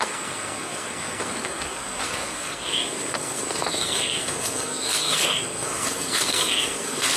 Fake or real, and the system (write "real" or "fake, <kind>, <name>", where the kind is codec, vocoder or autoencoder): fake, codec, SNAC